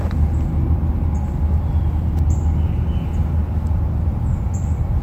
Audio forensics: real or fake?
real